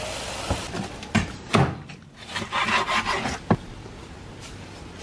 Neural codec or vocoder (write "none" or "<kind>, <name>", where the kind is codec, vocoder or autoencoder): none